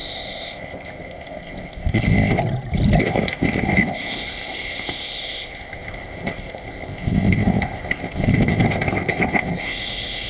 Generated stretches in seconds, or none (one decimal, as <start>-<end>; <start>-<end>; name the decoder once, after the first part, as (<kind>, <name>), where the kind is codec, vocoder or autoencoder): 0.0-2.4 (codec, ZipCodec); 3.0-10.3